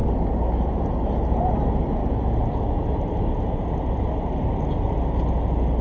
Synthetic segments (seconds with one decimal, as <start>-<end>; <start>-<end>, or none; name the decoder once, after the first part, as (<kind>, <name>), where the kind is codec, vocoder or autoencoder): none